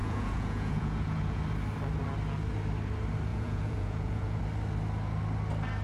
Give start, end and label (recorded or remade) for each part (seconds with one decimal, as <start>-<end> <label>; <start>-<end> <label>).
0.0-1.4 remade; 1.4-3.3 recorded; 3.3-4.4 remade; 4.4-5.8 recorded